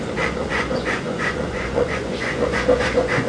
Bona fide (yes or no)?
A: no